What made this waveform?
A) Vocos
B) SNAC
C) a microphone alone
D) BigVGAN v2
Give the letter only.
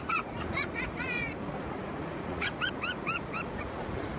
A